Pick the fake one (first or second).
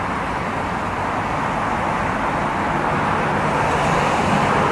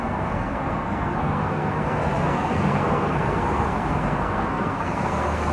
second